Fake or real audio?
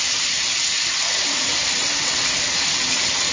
real